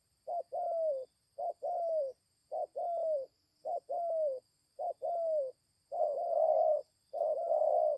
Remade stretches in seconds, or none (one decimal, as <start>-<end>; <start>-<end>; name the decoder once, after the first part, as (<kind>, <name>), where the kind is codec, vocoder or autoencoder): none